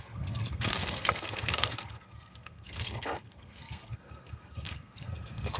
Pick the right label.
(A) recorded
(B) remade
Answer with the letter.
B